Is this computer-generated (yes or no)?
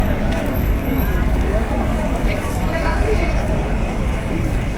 yes